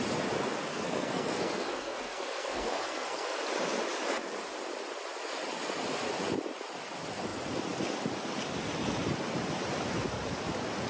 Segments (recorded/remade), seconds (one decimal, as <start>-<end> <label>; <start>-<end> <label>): 0.0-0.7 recorded; 0.7-3.4 remade; 3.4-10.9 recorded